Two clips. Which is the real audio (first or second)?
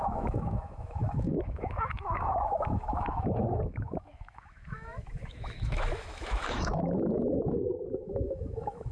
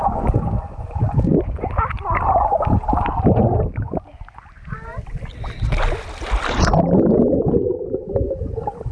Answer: second